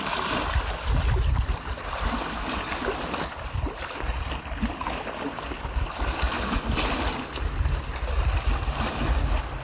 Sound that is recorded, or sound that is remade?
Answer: recorded